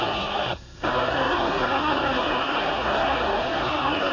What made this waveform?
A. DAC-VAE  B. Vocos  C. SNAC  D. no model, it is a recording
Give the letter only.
C